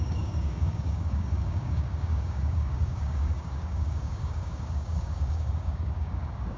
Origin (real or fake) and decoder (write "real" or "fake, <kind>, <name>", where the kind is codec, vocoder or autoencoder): fake, codec, DAC